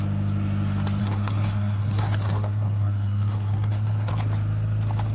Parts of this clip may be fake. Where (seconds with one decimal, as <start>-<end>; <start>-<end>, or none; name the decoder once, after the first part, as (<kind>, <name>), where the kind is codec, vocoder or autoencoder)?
1.0-4.1 (codec, SNAC)